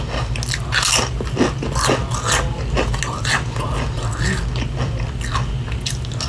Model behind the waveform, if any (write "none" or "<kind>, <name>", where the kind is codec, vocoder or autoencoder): none